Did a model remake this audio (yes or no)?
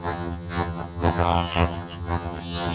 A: yes